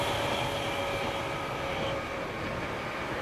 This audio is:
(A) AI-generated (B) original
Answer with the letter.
B